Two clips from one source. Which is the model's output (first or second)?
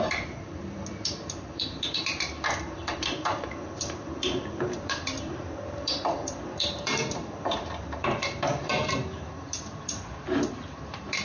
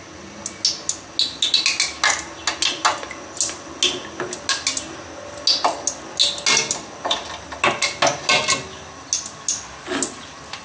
first